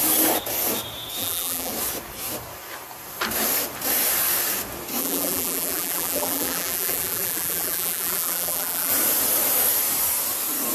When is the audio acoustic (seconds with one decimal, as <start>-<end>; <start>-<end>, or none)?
0.0-1.2; 1.7-5.0; 8.9-10.7